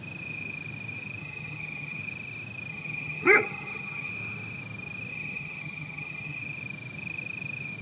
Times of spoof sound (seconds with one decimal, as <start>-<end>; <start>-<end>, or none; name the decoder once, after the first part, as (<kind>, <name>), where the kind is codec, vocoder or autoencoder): 1.2-2.0 (vocoder, HiFi-GAN); 2.7-4.1; 5.1-6.4